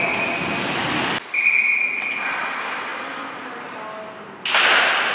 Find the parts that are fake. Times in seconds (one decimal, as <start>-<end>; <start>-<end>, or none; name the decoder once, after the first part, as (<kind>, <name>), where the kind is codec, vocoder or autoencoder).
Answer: none